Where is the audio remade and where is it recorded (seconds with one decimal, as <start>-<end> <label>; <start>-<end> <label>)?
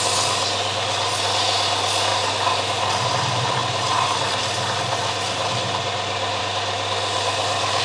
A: 0.0-7.8 recorded